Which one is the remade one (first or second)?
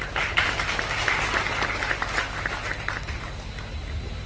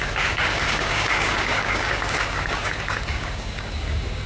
second